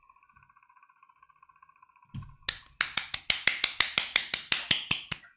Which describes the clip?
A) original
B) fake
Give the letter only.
A